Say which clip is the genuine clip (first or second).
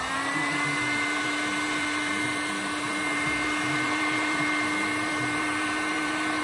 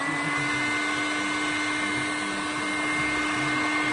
second